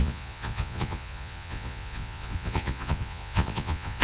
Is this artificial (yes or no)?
yes